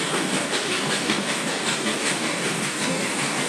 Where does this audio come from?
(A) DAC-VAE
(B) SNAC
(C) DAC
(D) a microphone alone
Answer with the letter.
C